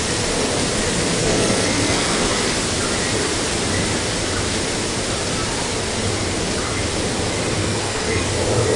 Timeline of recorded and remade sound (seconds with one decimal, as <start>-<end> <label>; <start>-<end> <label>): 0.0-1.2 recorded; 1.2-2.3 remade; 2.3-7.6 recorded; 7.6-8.2 remade; 8.2-8.8 recorded